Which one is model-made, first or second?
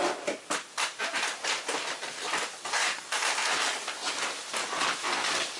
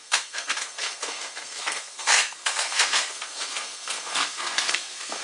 second